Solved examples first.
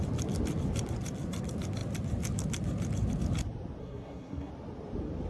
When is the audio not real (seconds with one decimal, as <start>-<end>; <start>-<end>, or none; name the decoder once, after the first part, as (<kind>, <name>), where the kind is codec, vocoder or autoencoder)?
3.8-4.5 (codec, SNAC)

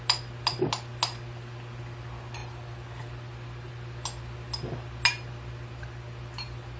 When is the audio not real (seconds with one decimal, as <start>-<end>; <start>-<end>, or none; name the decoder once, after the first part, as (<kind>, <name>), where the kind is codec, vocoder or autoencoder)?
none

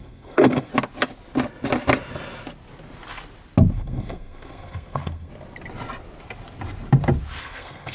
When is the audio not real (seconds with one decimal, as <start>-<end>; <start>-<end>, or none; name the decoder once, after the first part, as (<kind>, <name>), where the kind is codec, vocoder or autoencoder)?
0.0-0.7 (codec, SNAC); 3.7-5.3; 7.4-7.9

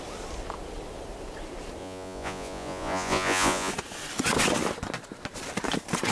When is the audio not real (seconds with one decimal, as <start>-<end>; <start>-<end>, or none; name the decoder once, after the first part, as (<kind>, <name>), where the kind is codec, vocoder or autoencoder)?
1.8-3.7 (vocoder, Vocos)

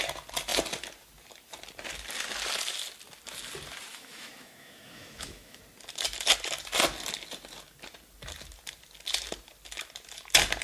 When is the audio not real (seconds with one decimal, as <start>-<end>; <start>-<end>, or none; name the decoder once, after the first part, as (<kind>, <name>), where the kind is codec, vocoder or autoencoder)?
3.9-5.6 (autoencoder, DAC-VAE)

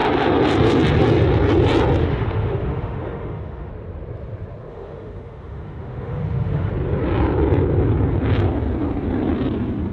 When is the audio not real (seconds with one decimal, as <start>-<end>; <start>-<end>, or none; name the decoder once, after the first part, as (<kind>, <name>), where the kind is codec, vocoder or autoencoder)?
2.0-3.7 (autoencoder, DAC-VAE); 4.7-6.7

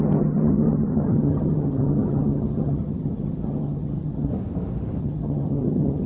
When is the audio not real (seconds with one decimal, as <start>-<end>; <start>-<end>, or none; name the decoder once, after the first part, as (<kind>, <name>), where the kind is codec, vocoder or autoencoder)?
0.0-4.3 (vocoder, HiFi-GAN); 5.0-6.1

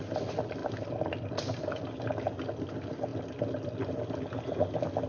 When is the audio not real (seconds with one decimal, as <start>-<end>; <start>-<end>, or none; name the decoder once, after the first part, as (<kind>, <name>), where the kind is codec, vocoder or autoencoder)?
none